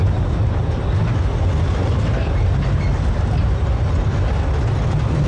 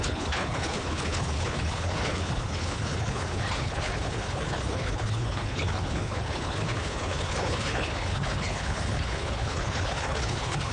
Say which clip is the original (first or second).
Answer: first